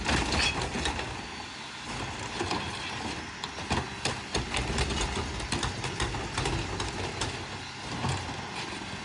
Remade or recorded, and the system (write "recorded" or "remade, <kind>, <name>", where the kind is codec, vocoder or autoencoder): recorded